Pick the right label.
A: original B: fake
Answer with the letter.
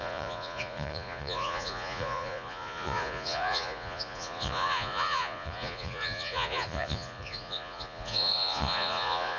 B